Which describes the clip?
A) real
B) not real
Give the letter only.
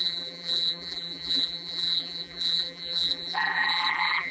B